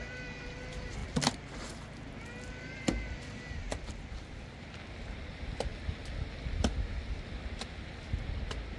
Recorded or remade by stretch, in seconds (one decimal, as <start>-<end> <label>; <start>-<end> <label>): 0.0-8.8 recorded